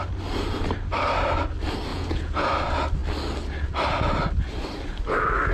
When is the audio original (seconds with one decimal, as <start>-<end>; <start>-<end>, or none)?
0.0-1.9; 2.5-5.5